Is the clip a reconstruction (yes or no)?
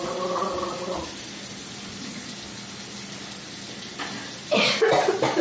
no